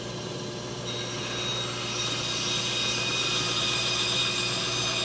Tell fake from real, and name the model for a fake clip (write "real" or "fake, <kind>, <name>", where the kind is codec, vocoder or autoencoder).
real